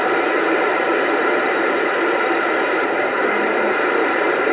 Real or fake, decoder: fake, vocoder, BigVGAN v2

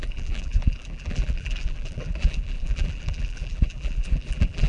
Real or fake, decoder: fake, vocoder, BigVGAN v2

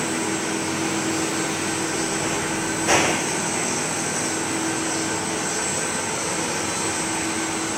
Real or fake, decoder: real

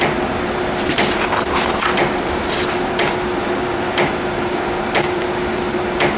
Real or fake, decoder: real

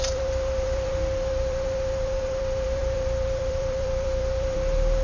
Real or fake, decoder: fake, vocoder, BigVGAN v2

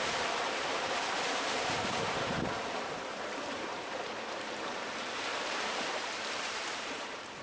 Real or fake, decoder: fake, vocoder, BigVGAN v2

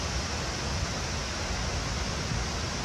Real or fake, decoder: real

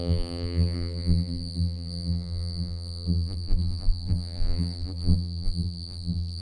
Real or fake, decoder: fake, vocoder, BigVGAN v2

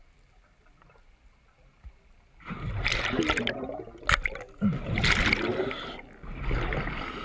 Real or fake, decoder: real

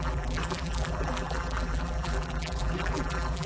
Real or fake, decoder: fake, vocoder, BigVGAN v2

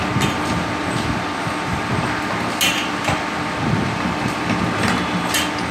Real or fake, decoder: real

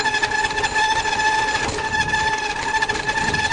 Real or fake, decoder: real